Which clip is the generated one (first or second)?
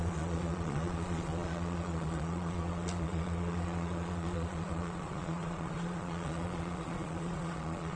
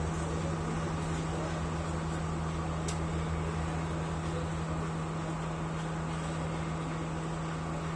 first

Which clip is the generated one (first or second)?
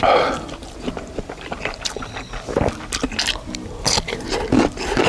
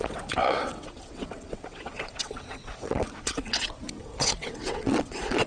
second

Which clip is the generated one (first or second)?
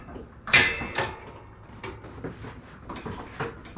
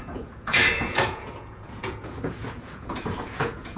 second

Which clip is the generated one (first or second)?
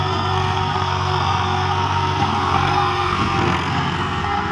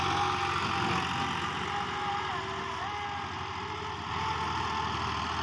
first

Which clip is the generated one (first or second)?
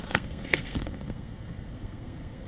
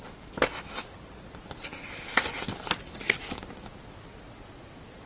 first